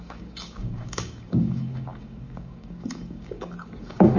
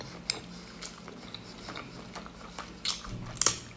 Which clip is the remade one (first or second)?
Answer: first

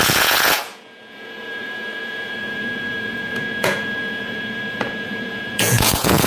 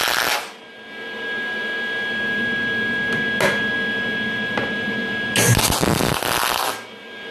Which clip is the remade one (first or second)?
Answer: first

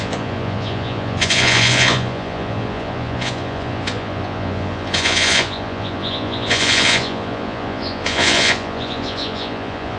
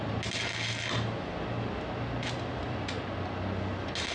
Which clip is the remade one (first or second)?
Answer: first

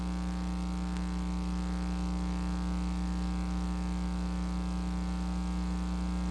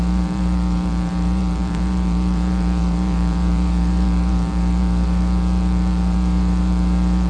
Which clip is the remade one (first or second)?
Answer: second